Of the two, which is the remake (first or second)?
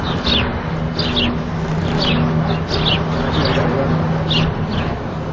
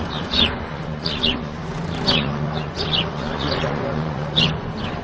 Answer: second